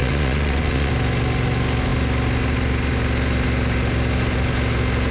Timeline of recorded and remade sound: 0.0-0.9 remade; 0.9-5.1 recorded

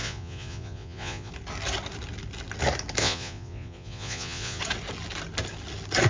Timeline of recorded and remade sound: 0.0-1.3 remade; 1.3-3.0 recorded; 3.0-4.6 remade; 4.6-6.1 recorded

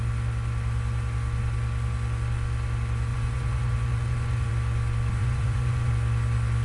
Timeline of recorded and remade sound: 0.0-3.1 recorded; 3.1-4.5 remade; 4.5-5.2 recorded; 5.2-5.9 remade; 5.9-6.6 recorded

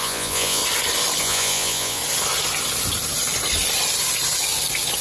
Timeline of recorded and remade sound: 0.0-0.6 remade; 0.6-1.2 recorded; 1.2-2.0 remade; 2.0-5.0 recorded